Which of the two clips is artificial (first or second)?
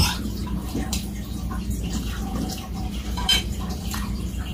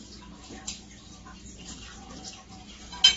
first